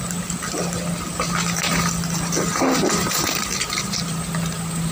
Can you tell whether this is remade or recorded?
recorded